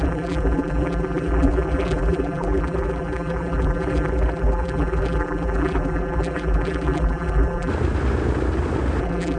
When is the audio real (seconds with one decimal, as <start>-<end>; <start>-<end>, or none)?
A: 7.7-9.0